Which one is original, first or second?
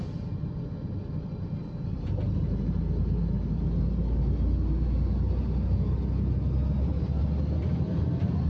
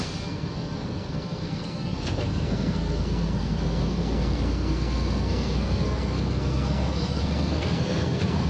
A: first